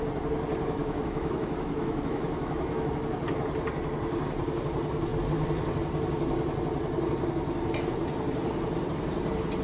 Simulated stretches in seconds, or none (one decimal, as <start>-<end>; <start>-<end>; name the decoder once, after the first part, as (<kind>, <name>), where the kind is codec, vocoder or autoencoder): 0.8-2.9 (autoencoder, DAC-VAE)